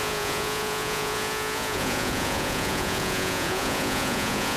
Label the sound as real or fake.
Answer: fake